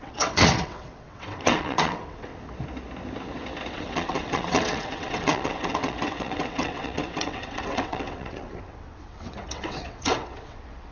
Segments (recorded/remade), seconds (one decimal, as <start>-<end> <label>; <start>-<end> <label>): 0.0-2.3 remade; 2.3-3.7 recorded; 3.7-10.9 remade